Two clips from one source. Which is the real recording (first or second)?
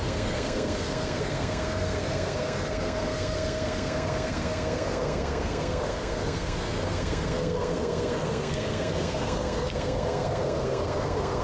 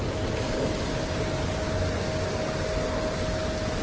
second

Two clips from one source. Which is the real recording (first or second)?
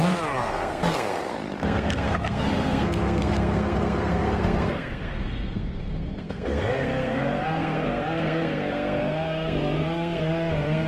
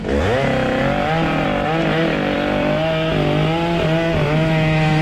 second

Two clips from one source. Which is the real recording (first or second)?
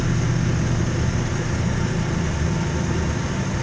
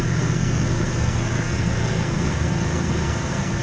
first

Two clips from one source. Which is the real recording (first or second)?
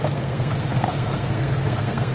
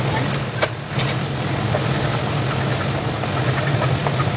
second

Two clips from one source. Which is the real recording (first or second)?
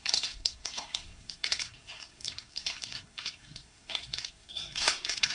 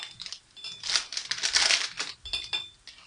second